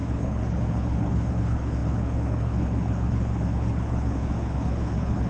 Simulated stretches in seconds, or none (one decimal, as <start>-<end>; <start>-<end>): 0.0-5.3